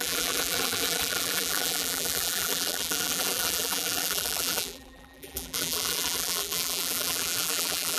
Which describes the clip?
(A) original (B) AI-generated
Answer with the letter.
B